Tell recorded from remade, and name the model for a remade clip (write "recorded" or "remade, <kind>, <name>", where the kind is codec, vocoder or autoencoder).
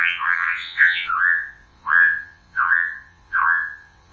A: remade, vocoder, WaveNeXt